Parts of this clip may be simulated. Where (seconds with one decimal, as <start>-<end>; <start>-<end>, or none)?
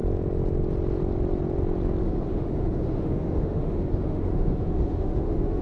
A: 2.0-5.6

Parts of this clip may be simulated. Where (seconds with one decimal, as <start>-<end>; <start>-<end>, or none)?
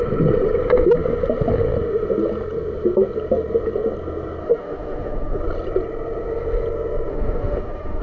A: 4.4-5.4; 7.1-8.0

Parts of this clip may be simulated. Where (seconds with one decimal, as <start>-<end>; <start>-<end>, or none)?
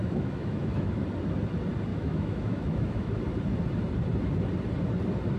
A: 0.0-1.0; 1.9-3.2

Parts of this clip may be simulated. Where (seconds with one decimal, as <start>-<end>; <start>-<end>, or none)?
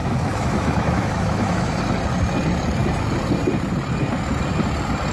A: 0.0-1.8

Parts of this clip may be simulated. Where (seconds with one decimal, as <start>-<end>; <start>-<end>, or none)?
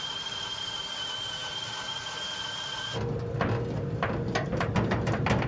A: none